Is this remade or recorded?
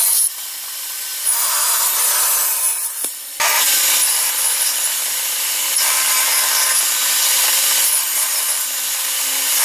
remade